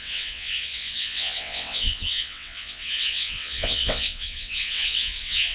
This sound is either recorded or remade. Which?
remade